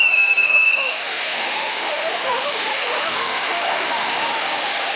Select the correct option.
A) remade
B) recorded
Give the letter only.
A